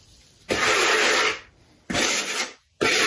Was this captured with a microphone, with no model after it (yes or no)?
no